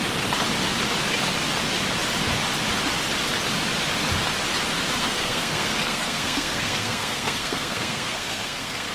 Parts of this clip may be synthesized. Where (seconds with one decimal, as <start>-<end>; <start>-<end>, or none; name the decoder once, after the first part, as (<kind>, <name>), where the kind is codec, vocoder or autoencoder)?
5.0-8.9 (codec, SNAC)